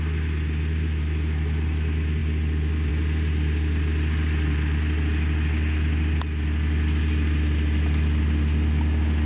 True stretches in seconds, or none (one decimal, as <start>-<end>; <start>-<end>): 0.0-9.2